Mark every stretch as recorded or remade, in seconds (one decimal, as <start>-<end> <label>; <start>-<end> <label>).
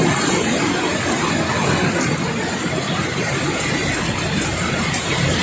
0.0-5.4 recorded